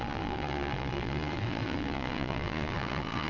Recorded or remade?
remade